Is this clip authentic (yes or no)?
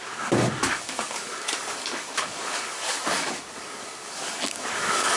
no